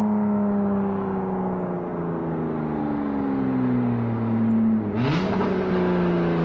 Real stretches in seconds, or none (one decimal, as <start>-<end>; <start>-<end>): 0.0-6.4